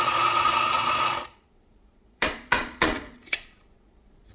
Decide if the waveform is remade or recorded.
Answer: remade